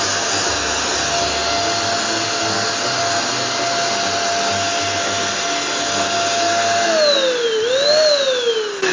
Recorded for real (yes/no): yes